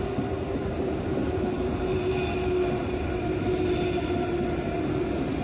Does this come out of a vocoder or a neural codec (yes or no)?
no